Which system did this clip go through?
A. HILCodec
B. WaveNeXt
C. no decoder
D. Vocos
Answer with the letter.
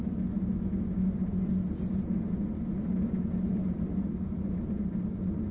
C